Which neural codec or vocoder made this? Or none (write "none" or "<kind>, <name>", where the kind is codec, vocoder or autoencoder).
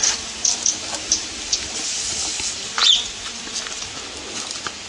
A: none